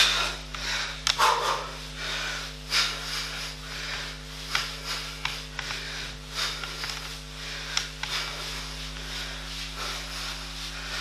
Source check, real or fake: real